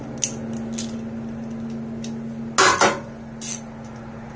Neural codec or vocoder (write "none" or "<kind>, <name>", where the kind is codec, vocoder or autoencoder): none